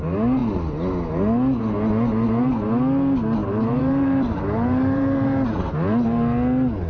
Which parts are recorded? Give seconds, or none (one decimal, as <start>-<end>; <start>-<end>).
0.0-3.4; 5.7-6.9